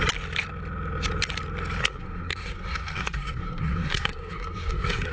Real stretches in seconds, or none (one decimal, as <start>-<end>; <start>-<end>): 0.0-1.8